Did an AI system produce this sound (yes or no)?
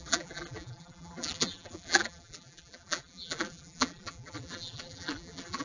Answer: yes